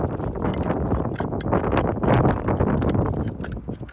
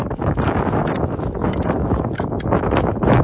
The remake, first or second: second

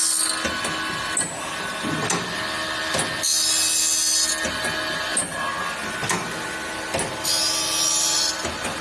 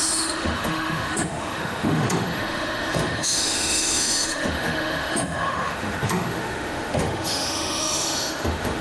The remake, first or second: second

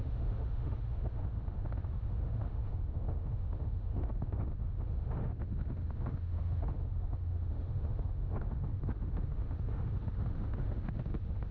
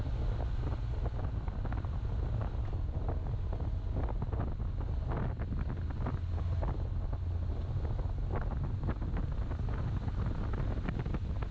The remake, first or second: first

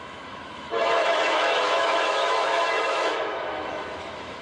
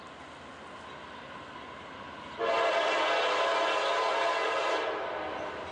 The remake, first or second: first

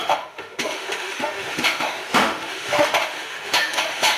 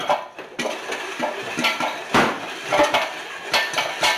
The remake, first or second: first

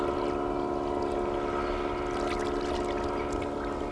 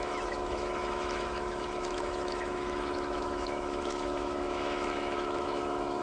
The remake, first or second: second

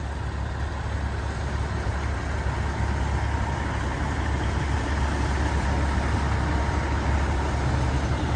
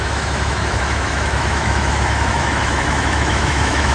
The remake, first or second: second